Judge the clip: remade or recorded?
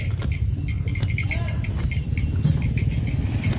recorded